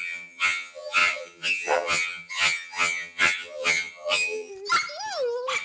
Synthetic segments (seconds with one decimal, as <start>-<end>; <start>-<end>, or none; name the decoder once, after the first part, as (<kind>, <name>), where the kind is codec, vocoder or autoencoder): 0.0-4.5 (vocoder, HiFi-GAN)